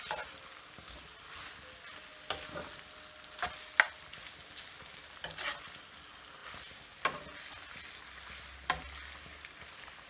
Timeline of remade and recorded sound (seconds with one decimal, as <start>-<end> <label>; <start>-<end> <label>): 0.0-10.1 recorded